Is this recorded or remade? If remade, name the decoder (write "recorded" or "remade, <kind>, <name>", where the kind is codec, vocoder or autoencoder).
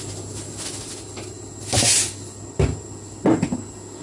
recorded